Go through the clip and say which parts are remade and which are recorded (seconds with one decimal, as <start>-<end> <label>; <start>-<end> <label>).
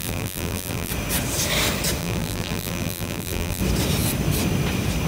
0.0-0.9 remade; 0.9-2.0 recorded; 2.0-3.6 remade; 3.6-5.1 recorded